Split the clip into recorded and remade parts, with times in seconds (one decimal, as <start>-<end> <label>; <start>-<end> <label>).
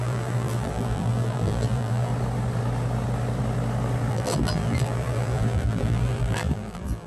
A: 0.0-2.1 remade; 2.1-4.1 recorded; 4.1-7.1 remade